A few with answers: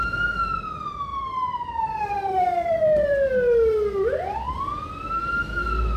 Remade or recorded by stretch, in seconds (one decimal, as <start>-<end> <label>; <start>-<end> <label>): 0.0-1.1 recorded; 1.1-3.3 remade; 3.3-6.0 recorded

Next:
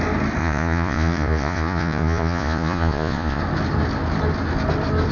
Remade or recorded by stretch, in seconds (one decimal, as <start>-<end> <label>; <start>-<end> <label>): 0.0-0.4 recorded; 0.4-3.4 remade; 3.4-5.1 recorded

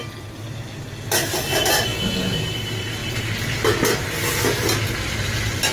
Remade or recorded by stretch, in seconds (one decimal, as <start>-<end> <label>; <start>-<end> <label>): 0.0-1.9 recorded; 1.9-2.5 remade; 2.5-5.7 recorded

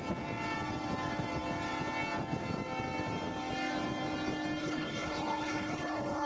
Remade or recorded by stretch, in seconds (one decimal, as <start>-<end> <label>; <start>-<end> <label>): 0.0-4.6 recorded; 4.6-6.3 remade

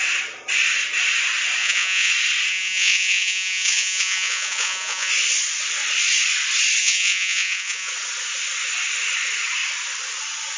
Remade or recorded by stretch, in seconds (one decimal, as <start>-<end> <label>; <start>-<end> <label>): 0.0-1.6 recorded; 1.6-2.1 remade; 2.1-2.5 recorded; 2.5-5.1 remade; 5.1-6.8 recorded; 6.8-7.9 remade; 7.9-10.6 recorded